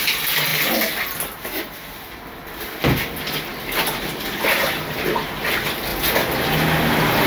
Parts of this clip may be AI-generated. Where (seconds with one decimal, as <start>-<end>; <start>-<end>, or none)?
none